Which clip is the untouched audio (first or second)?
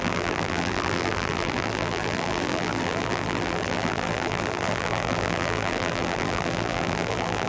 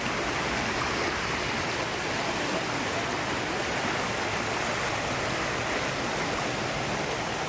second